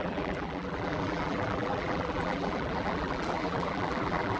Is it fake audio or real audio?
fake